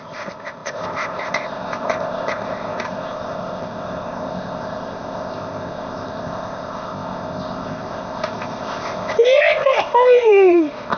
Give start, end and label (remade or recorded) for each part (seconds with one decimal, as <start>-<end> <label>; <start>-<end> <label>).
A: 0.0-11.0 remade